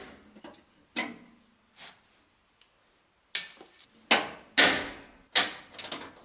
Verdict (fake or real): real